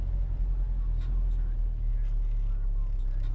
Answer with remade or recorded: recorded